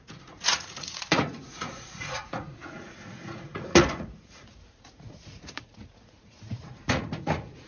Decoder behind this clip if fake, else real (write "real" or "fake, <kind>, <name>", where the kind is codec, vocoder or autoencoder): fake, vocoder, Vocos